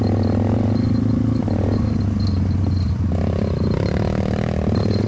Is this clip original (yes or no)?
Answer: yes